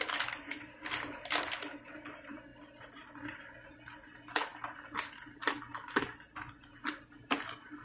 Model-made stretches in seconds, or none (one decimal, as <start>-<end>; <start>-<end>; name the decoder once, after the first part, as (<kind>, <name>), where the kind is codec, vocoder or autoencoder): none